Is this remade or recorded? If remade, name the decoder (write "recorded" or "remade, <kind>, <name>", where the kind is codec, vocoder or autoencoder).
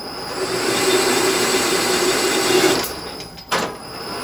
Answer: remade, vocoder, BigVGAN v2